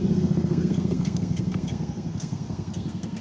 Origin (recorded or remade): remade